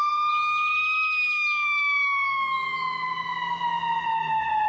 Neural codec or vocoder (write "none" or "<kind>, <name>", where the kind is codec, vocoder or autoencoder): none